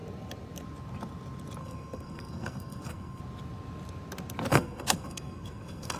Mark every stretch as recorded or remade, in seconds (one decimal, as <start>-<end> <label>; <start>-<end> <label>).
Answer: 0.0-1.6 recorded; 1.6-3.2 remade; 3.2-4.5 recorded; 4.5-6.0 remade